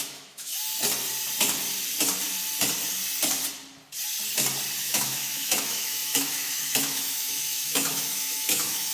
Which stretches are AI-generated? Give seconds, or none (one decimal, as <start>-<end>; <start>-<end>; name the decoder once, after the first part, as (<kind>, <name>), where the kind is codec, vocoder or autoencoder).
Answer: 0.0-0.5 (autoencoder, DAC-VAE); 4.8-8.9